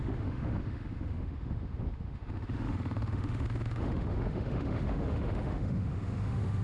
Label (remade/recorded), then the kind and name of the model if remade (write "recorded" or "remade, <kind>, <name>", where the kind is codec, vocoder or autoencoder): remade, autoencoder, DAC-VAE